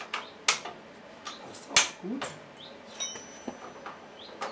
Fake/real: real